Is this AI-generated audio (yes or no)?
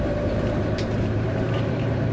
yes